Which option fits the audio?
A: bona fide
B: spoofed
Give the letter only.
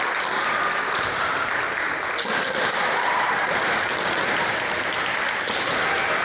A